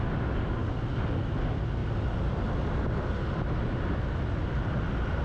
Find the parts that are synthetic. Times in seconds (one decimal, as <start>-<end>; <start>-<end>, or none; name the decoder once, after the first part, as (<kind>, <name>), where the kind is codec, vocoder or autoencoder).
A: none